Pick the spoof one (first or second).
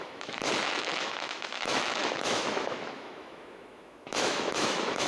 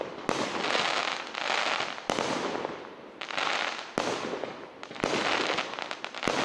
first